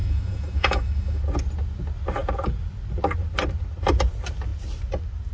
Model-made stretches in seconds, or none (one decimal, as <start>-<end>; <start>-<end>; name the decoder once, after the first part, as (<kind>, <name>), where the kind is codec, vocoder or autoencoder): 0.0-1.2 (autoencoder, DAC-VAE)